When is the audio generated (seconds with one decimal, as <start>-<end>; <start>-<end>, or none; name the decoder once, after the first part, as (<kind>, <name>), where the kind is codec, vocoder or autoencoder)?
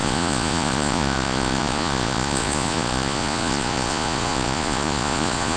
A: 0.0-5.6 (vocoder, Vocos)